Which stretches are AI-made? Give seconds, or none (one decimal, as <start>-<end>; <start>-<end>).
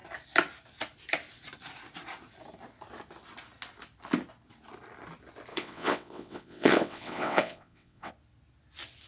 5.5-8.1